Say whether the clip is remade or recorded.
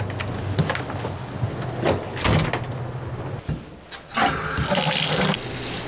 recorded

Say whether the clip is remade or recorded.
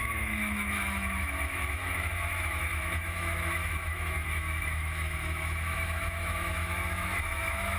remade